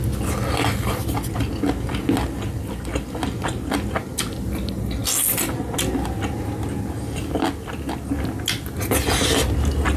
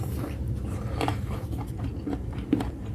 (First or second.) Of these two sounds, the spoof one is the second